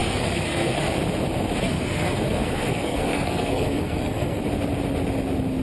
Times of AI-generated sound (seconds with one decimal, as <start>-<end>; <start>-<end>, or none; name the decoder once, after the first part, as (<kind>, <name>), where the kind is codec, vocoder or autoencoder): 0.0-0.9 (codec, SNAC); 1.6-4.4